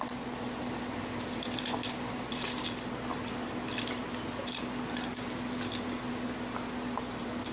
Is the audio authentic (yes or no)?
yes